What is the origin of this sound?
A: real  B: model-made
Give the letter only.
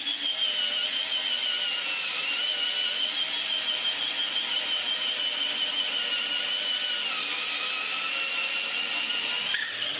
A